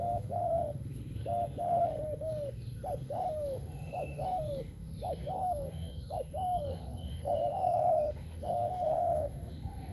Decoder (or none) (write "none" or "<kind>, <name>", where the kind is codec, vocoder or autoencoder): autoencoder, DAC-VAE